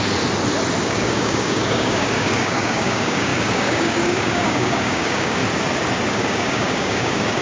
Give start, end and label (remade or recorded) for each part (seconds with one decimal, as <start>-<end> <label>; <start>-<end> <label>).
0.0-0.8 recorded; 0.8-5.4 remade; 5.4-6.1 recorded; 6.1-7.4 remade